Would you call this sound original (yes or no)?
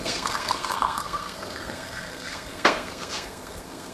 no